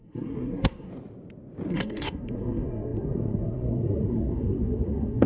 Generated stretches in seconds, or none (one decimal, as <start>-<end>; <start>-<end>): 0.0-0.9; 1.7-5.3